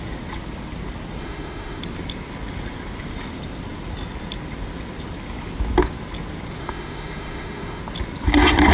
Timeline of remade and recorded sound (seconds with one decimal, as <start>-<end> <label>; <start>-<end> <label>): 0.0-1.2 recorded; 1.2-1.8 remade; 1.8-6.6 recorded; 6.6-7.8 remade; 7.8-8.7 recorded